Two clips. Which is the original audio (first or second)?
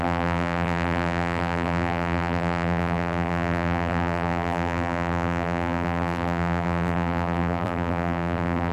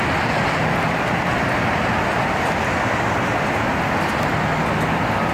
second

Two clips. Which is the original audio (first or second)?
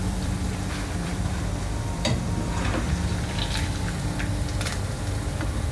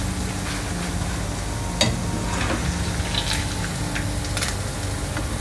second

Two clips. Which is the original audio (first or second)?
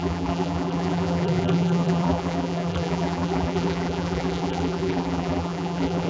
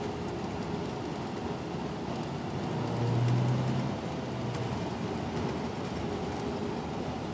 second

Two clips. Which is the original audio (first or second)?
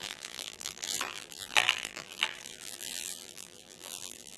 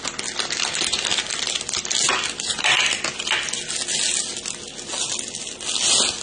second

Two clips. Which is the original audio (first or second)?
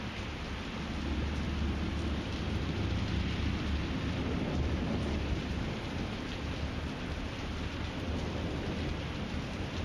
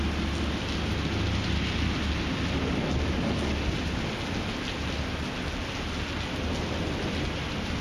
second